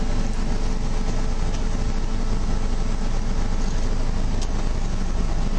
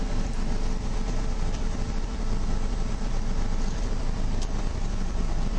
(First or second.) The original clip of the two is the first